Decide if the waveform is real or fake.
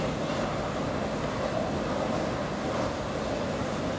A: real